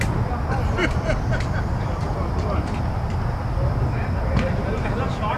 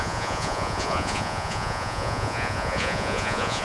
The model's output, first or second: second